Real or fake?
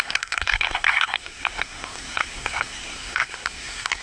fake